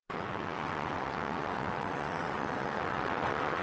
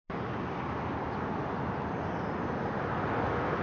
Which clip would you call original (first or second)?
second